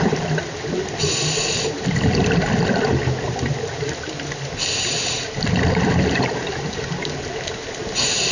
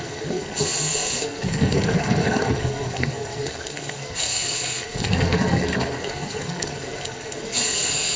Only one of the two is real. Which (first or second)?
first